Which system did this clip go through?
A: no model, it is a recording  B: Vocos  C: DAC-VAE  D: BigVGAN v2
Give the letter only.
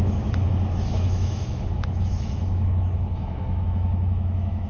C